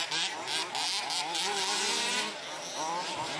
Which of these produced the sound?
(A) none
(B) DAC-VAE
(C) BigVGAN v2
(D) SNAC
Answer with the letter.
A